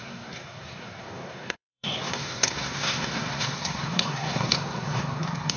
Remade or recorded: remade